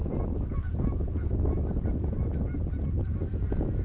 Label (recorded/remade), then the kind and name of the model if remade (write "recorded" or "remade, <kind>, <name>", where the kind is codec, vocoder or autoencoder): recorded